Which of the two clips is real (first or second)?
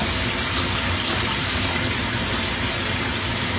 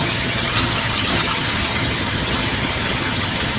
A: first